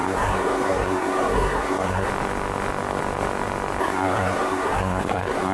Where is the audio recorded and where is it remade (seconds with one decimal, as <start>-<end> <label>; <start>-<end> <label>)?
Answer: 0.0-2.1 remade; 2.1-3.8 recorded; 3.8-5.5 remade